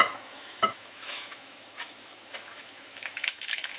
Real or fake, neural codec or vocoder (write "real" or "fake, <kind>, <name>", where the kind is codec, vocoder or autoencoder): fake, autoencoder, DAC-VAE